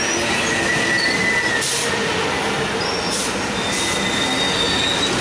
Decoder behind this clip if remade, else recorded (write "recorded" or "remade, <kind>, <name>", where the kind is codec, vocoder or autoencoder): recorded